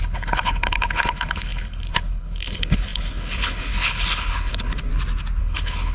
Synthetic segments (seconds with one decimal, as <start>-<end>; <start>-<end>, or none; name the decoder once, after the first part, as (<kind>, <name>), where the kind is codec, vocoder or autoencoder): 0.0-4.9 (codec, HILCodec); 5.4-5.9